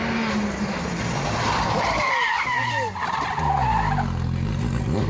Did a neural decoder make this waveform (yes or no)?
no